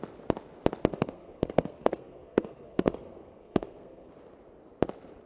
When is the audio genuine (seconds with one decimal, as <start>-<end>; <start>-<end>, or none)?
0.0-0.9; 4.1-5.3